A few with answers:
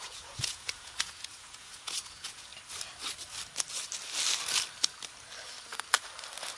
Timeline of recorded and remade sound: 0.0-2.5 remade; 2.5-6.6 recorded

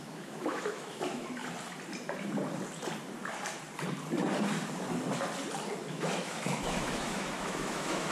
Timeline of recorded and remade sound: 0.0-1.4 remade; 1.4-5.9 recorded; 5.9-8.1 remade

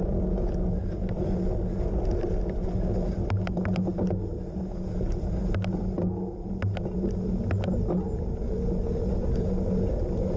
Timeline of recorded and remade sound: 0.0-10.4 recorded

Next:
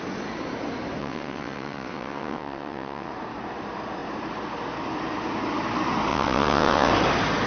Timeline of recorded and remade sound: 0.0-1.0 recorded; 1.0-3.1 remade; 3.1-6.1 recorded; 6.1-6.9 remade; 6.9-7.5 recorded

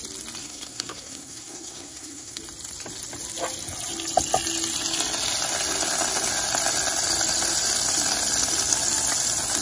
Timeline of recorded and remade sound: 0.0-0.4 recorded; 0.4-2.4 remade; 2.4-9.6 recorded

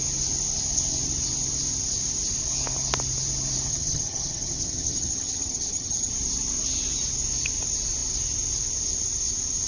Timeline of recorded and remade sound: 0.0-3.7 recorded; 3.7-6.1 remade; 6.1-9.7 recorded

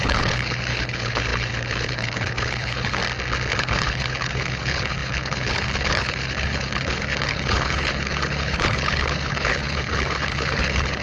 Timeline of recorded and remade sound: 0.0-3.0 remade; 3.0-3.5 recorded; 3.5-11.0 remade

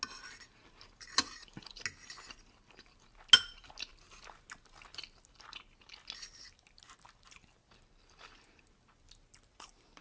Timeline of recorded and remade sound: 0.0-10.0 recorded